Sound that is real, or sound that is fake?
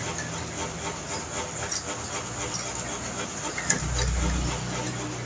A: real